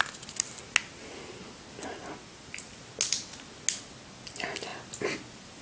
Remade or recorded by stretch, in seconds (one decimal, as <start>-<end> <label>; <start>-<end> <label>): 0.0-5.6 recorded